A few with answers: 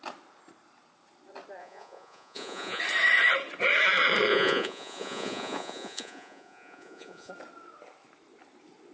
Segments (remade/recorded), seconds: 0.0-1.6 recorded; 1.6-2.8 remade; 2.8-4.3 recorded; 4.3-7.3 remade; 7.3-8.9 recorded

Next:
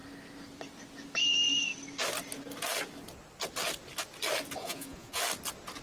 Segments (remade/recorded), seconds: 0.0-4.6 recorded; 4.6-5.2 remade; 5.2-5.8 recorded

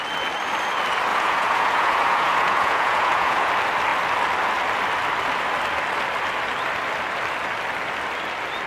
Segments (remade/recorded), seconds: 0.0-1.1 recorded; 1.1-3.5 remade; 3.5-8.7 recorded

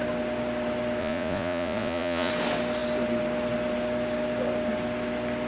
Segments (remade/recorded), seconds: 0.0-1.0 recorded; 1.0-2.3 remade; 2.3-5.5 recorded